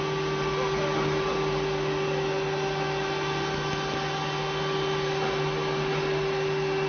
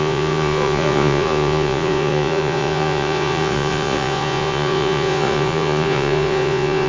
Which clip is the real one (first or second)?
first